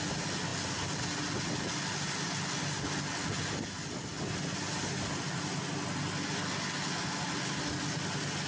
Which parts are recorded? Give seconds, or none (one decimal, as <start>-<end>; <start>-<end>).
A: 0.0-8.5